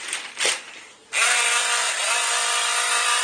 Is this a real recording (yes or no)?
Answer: no